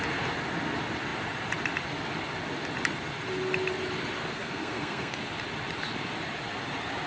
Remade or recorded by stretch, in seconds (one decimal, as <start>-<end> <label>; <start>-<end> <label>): 0.0-4.2 recorded; 4.2-5.2 remade; 5.2-7.1 recorded